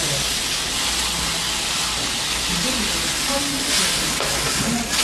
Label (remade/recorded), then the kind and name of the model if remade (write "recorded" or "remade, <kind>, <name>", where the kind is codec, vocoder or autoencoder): recorded